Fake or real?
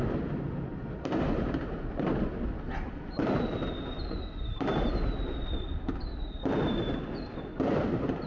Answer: real